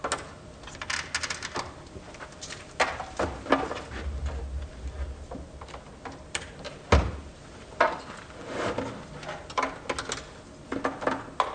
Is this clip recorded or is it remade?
recorded